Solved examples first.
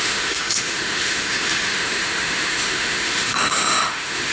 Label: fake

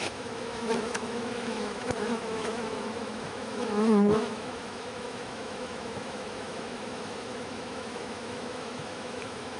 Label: fake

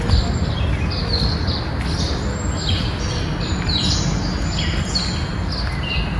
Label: real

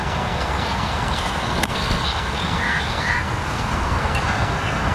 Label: fake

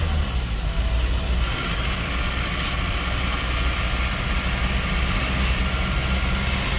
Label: real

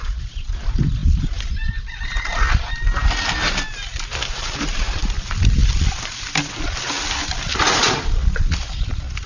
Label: real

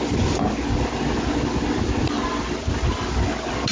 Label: real